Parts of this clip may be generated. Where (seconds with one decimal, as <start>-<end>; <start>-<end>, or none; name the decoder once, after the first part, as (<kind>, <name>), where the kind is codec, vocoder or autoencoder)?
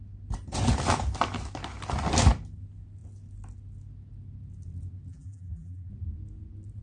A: 5.1-5.9 (vocoder, BigVGAN v2)